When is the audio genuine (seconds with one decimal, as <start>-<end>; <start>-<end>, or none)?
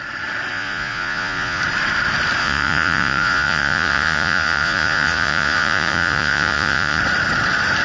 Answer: 0.0-0.5; 1.6-2.4; 7.0-7.8